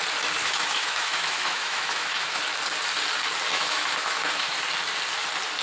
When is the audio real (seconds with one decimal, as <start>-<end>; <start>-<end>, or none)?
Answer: 0.0-0.4; 2.4-3.5; 4.5-5.6